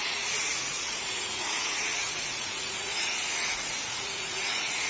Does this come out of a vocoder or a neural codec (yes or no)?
yes